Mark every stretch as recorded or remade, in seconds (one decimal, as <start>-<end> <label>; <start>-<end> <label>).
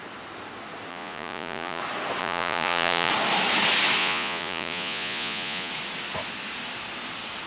0.0-0.9 recorded; 0.9-1.8 remade; 1.8-2.2 recorded; 2.2-3.1 remade; 3.1-4.0 recorded; 4.0-5.7 remade; 5.7-7.5 recorded